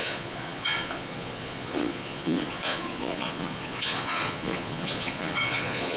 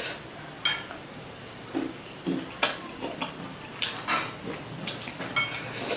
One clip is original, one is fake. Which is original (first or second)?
second